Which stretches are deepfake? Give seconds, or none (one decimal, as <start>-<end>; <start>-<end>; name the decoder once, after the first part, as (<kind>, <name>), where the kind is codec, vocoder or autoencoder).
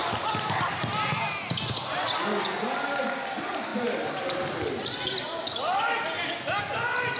none